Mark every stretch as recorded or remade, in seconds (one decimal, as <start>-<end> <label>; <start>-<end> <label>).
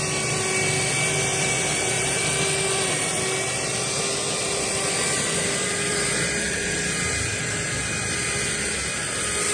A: 0.0-1.3 recorded; 1.3-3.2 remade; 3.2-4.4 recorded; 4.4-7.4 remade; 7.4-9.5 recorded